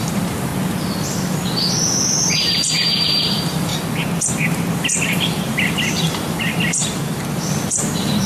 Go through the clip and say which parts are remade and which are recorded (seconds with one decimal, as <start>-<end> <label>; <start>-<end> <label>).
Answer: 0.0-0.5 remade; 0.5-1.7 recorded; 1.7-3.7 remade; 3.7-4.5 recorded; 4.5-8.3 remade